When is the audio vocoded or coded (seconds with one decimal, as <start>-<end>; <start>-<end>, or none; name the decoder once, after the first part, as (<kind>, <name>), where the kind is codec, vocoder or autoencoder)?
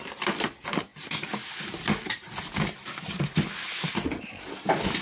none